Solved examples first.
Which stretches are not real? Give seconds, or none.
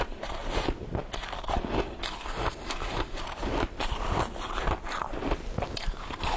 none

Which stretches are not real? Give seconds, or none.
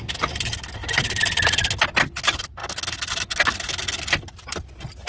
none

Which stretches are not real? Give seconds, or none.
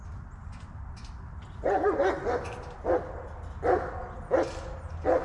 none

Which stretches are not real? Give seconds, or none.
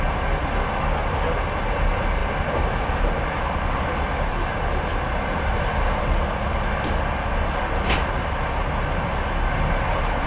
2.2-6.0 (vocoder, BigVGAN v2)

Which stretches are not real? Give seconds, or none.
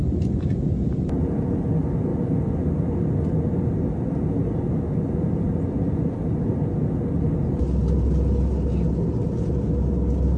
none